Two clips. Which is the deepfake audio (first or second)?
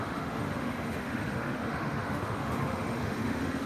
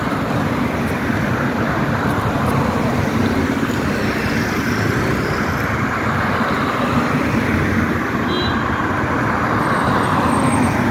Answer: first